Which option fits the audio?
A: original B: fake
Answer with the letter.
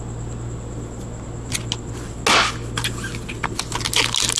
A